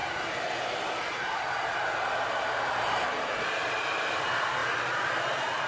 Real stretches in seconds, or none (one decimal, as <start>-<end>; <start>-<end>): 3.4-4.6; 5.1-5.7